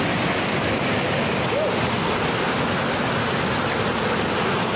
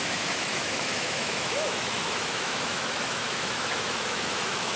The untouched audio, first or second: first